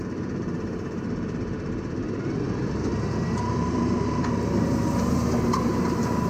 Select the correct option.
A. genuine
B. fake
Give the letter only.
B